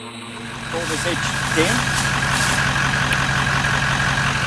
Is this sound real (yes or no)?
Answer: yes